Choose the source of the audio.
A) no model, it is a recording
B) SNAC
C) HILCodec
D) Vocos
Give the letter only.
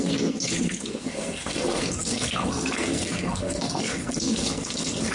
B